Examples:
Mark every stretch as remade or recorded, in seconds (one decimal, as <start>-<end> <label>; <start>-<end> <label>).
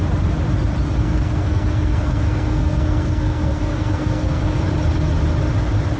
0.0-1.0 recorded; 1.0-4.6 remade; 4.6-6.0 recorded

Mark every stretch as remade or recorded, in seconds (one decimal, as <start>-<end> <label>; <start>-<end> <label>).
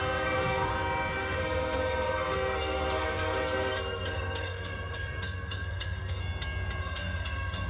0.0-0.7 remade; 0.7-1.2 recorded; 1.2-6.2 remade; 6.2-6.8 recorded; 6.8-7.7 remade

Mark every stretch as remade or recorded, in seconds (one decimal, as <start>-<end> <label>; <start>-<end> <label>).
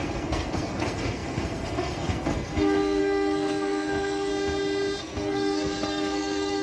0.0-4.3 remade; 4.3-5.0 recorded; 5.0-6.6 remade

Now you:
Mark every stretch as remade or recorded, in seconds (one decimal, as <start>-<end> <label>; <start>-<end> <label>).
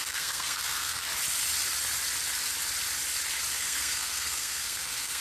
0.0-1.1 remade; 1.1-3.5 recorded; 3.5-5.2 remade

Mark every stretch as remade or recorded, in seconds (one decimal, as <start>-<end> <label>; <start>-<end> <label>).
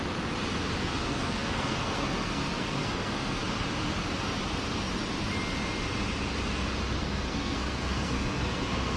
0.0-0.8 recorded; 0.8-3.4 remade; 3.4-7.0 recorded; 7.0-9.0 remade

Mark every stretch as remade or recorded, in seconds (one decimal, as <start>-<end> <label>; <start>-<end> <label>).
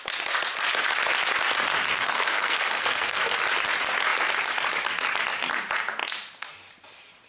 0.0-1.9 recorded; 1.9-3.4 remade; 3.4-7.3 recorded